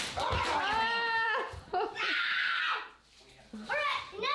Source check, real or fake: real